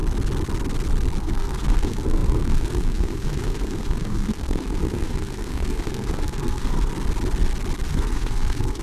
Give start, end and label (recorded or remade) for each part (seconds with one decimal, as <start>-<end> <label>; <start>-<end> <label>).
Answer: 0.0-1.2 recorded; 1.2-6.9 remade; 6.9-7.9 recorded; 7.9-8.8 remade